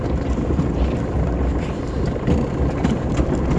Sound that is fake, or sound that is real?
real